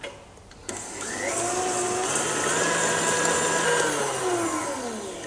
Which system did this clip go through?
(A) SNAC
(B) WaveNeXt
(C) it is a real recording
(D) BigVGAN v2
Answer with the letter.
C